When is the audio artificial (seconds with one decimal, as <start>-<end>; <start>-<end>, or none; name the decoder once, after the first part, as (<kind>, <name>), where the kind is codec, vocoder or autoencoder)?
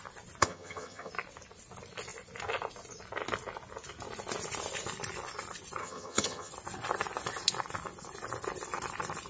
0.4-1.1 (vocoder, HiFi-GAN); 5.8-6.5